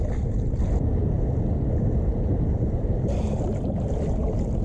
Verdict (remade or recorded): recorded